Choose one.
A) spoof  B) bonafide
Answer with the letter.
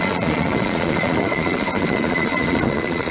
A